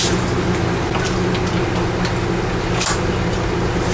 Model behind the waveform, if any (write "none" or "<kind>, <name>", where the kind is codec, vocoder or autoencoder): none